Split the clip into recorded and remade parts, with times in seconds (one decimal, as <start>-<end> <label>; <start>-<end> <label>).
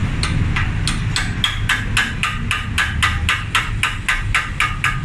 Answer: 0.0-5.0 recorded